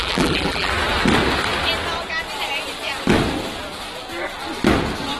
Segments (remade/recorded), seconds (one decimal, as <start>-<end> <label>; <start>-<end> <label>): 0.0-0.7 remade; 0.7-5.2 recorded